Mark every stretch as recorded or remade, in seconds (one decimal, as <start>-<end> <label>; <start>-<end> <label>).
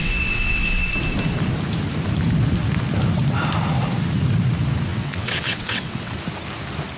0.0-0.9 remade; 0.9-4.9 recorded; 4.9-6.1 remade; 6.1-7.0 recorded